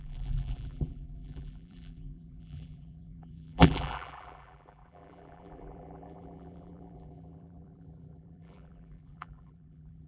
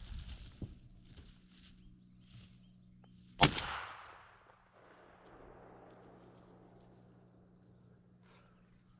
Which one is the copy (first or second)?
first